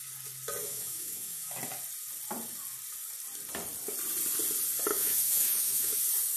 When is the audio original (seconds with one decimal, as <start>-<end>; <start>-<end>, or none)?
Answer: 0.0-0.6; 1.5-4.9; 6.0-6.4